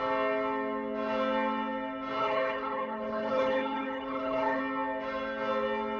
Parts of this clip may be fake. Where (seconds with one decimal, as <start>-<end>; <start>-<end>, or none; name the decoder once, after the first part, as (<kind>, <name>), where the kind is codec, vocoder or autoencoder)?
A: 2.2-4.6 (codec, HILCodec)